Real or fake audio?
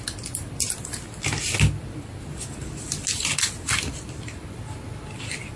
real